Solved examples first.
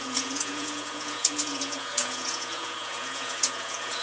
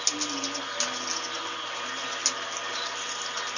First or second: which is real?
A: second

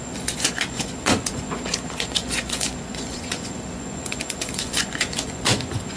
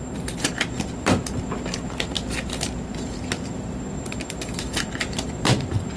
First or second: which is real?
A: second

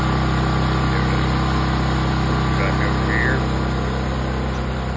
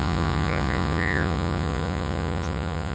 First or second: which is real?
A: first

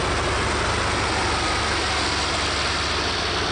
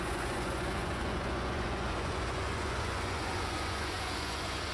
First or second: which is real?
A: first